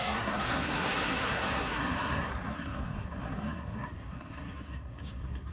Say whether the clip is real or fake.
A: fake